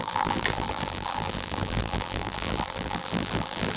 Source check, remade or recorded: remade